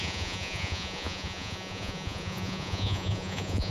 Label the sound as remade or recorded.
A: remade